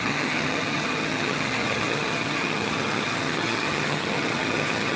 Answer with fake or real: fake